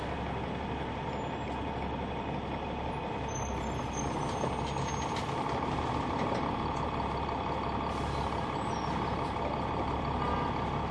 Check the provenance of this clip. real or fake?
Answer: real